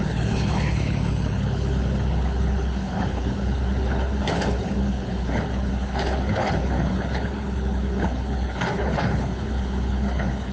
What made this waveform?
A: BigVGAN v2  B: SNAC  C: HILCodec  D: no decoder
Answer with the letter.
C